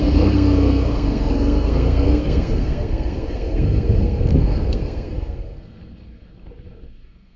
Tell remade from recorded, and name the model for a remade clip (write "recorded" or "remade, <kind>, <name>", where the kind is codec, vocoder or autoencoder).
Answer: remade, codec, SNAC